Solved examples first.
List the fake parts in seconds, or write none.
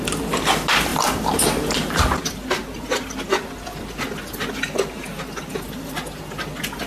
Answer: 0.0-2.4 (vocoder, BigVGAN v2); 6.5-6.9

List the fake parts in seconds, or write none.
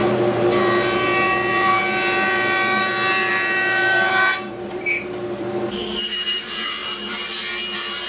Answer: 0.0-8.1 (vocoder, BigVGAN v2)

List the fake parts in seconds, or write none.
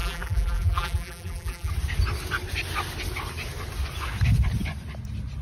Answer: 0.0-1.7 (vocoder, BigVGAN v2)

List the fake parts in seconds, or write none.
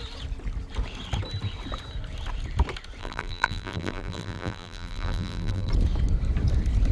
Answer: 3.0-5.7 (vocoder, BigVGAN v2)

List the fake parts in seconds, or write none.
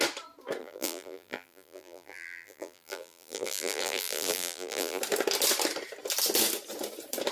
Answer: 0.6-5.0 (vocoder, BigVGAN v2)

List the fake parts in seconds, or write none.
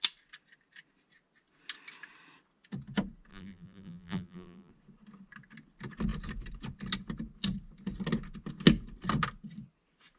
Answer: 3.3-4.7 (vocoder, BigVGAN v2)